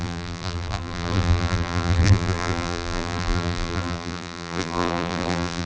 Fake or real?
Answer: fake